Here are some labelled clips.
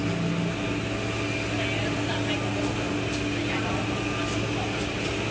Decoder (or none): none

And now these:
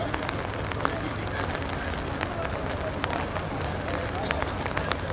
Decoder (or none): none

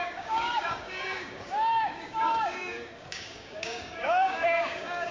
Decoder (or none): codec, DAC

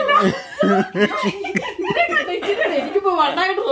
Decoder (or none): none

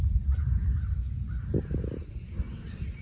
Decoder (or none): none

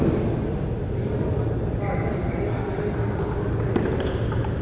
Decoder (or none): none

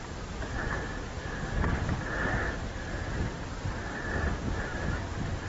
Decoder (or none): none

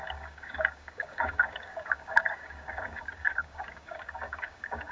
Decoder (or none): codec, DAC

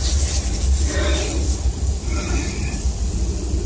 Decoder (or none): none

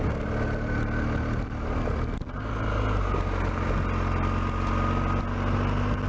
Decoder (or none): none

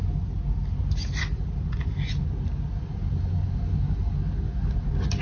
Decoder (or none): none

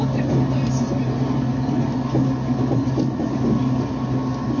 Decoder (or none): none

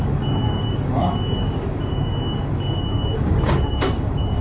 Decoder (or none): codec, DAC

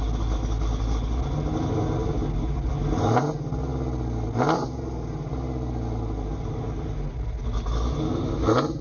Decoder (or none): none